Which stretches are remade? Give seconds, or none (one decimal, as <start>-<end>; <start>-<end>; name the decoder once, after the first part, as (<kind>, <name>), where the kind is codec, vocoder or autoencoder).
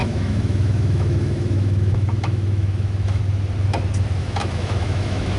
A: 0.0-3.2 (autoencoder, DAC-VAE); 4.2-5.4